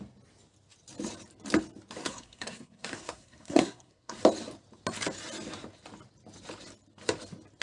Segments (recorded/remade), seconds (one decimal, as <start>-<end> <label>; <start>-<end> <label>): 0.0-2.0 recorded; 2.0-4.2 remade; 4.2-7.6 recorded